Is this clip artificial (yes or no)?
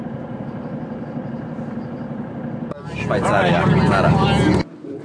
no